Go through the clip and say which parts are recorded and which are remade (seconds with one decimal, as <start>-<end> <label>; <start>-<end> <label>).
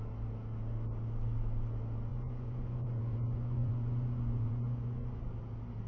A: 0.0-2.1 recorded; 2.1-5.2 remade; 5.2-5.9 recorded